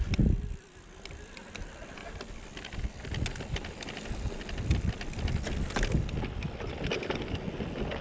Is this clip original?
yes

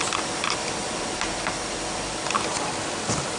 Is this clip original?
yes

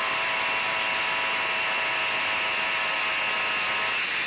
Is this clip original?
yes